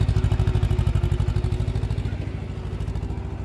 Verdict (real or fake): real